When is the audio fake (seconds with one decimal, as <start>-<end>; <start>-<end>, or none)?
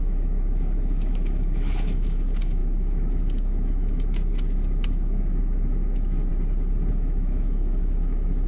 0.0-6.3; 6.9-8.5